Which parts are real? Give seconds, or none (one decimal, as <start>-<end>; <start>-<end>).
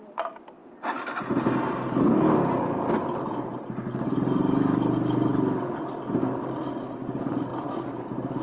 0.0-8.4